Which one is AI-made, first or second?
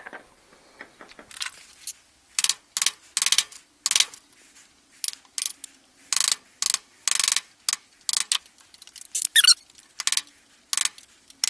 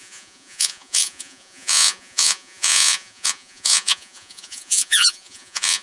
second